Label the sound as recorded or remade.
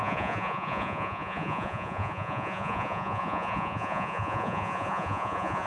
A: remade